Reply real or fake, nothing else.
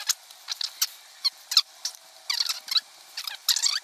real